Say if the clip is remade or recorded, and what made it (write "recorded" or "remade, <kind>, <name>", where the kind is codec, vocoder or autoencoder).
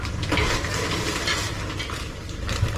recorded